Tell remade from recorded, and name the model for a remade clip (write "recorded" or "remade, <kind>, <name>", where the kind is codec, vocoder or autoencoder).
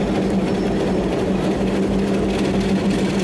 recorded